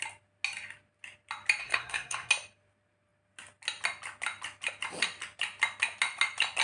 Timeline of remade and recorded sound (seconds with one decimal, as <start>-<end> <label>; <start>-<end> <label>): 0.0-1.6 recorded; 1.6-2.3 remade; 2.3-6.6 recorded